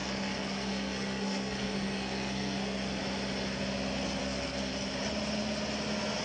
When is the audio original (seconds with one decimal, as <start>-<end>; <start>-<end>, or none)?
3.0-4.2; 4.7-6.2